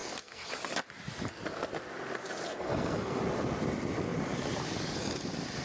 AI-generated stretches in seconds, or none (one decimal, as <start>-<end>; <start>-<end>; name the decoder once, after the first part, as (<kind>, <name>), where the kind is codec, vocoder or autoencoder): 0.0-0.5 (codec, SNAC); 2.5-3.2